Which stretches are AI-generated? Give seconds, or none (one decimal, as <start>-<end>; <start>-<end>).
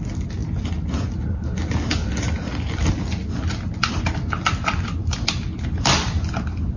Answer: none